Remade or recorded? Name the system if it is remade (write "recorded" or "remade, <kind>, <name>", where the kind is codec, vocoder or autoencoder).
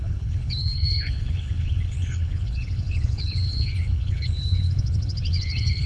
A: remade, codec, HILCodec